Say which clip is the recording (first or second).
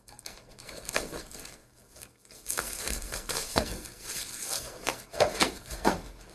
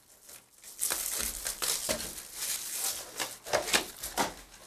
second